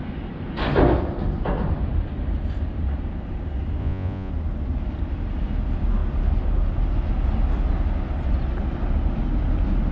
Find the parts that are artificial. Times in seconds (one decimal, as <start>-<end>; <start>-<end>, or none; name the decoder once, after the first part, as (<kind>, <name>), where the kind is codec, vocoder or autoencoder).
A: 3.8-4.3 (vocoder, Vocos)